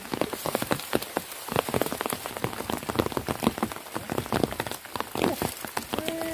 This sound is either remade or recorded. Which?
recorded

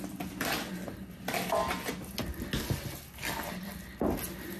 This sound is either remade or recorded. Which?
recorded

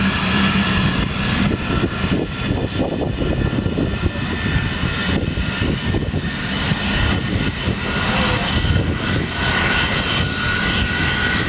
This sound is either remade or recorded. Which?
recorded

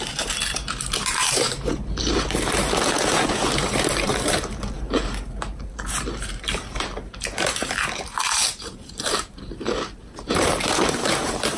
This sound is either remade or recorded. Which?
remade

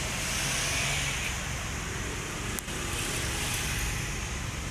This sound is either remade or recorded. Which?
recorded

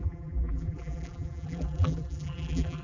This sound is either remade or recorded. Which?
remade